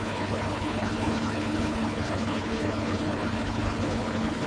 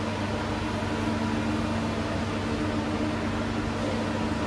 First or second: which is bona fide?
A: second